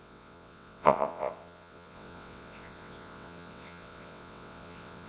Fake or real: fake